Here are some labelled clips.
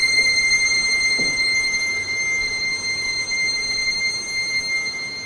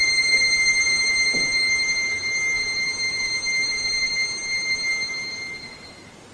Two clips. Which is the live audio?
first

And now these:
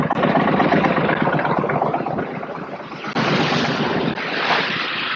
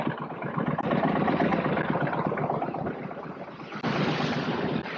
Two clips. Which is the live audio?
first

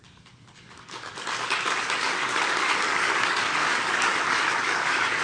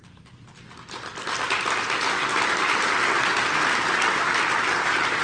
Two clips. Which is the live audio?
second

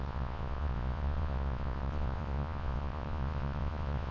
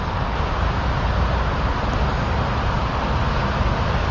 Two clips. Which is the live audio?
second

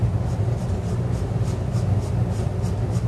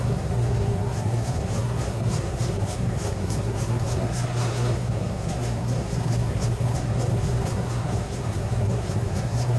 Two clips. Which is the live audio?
first